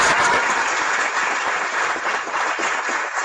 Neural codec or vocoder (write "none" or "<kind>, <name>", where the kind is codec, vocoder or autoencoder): none